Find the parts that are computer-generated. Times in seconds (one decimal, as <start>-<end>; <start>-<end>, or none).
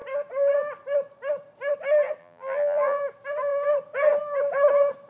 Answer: 2.2-3.0